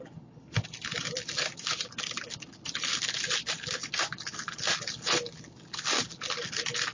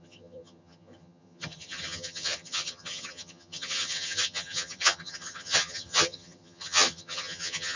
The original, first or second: first